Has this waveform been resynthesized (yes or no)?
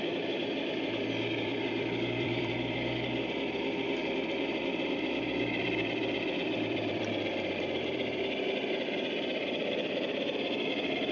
yes